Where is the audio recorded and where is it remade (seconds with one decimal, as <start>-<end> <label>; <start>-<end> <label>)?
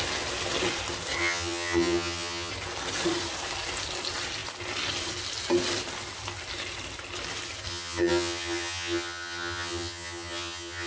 0.0-1.2 recorded; 1.2-2.5 remade; 2.5-7.7 recorded; 7.7-10.9 remade